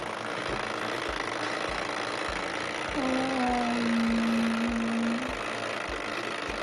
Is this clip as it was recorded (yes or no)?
yes